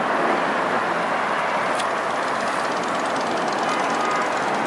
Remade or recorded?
recorded